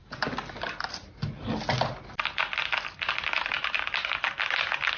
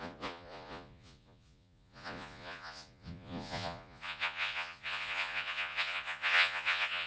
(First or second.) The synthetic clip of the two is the second